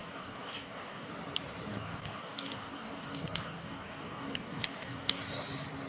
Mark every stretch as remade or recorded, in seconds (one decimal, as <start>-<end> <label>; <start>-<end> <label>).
0.0-1.1 remade; 1.1-1.7 recorded; 1.7-5.2 remade; 5.2-5.9 recorded